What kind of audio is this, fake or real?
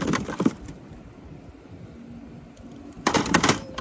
fake